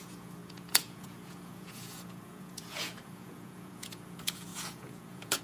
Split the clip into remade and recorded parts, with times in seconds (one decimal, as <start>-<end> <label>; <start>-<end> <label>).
0.0-5.4 remade